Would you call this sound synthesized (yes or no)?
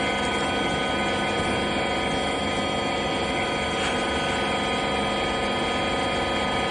no